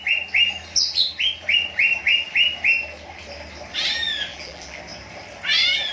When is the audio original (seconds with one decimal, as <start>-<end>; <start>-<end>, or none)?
0.0-4.3; 4.8-5.9